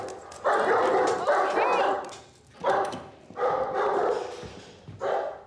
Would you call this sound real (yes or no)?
yes